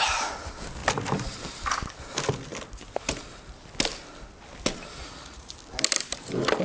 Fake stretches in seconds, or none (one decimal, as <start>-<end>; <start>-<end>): 5.0-5.5